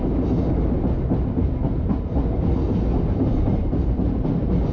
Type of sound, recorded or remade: recorded